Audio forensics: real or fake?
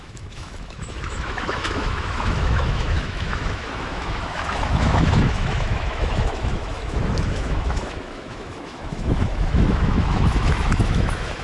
fake